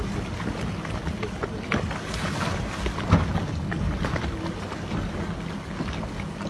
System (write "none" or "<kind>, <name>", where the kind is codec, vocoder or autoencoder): none